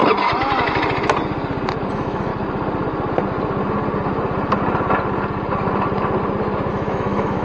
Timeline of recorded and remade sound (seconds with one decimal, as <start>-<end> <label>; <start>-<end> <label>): 0.0-1.9 recorded; 1.9-2.3 remade; 2.3-6.7 recorded; 6.7-7.4 remade